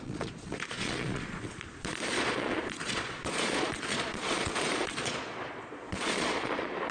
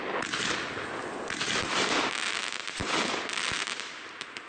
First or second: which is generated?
first